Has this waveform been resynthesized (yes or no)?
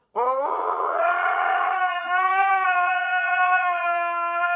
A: yes